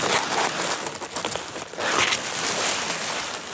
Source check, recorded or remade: recorded